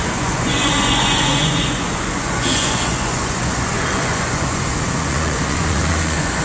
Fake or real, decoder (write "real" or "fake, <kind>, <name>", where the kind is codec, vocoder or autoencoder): fake, vocoder, Vocos